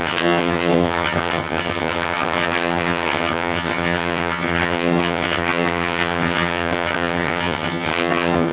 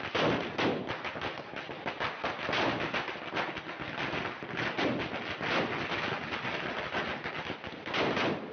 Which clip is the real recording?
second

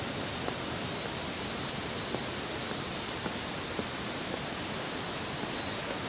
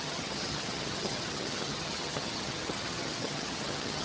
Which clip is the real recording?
first